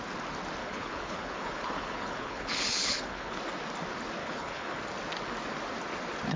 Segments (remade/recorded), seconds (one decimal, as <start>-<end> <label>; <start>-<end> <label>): 0.0-0.6 recorded; 0.6-3.4 remade; 3.4-4.2 recorded; 4.2-4.8 remade; 4.8-6.4 recorded